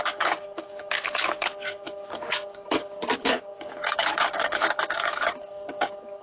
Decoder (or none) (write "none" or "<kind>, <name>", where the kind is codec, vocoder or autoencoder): codec, DAC